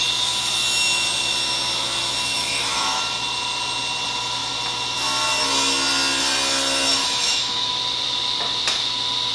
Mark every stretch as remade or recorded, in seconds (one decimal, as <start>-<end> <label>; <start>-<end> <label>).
0.0-2.3 recorded; 2.3-3.0 remade; 3.0-7.0 recorded; 7.0-7.7 remade; 7.7-9.3 recorded